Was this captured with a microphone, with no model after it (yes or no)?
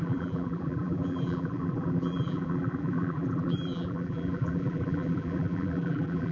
no